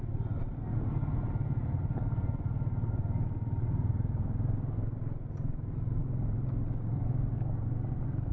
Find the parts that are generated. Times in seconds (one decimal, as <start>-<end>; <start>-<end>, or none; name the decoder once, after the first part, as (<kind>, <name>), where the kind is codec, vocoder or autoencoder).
none